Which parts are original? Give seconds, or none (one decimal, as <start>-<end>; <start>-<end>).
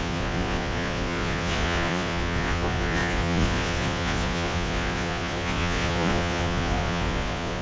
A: none